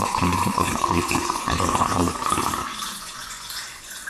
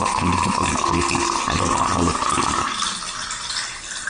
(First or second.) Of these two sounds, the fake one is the first